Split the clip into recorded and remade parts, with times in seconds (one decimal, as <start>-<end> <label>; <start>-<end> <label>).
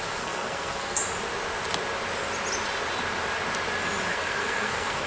0.0-1.0 remade; 1.0-4.1 recorded; 4.1-5.1 remade